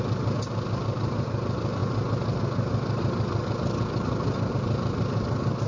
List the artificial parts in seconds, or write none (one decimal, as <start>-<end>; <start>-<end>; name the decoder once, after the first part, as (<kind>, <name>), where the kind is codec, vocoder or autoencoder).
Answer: none